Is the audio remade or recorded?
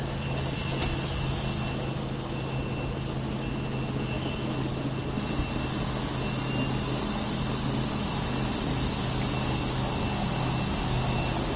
recorded